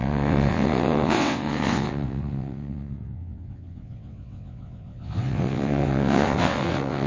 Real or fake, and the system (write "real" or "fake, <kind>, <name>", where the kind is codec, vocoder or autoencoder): fake, vocoder, WaveNeXt